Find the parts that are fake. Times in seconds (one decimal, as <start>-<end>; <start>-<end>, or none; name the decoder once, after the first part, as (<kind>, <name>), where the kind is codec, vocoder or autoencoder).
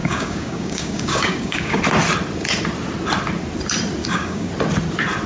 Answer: 0.0-1.8 (codec, DAC); 4.0-4.5